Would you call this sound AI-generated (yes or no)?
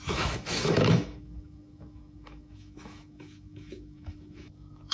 yes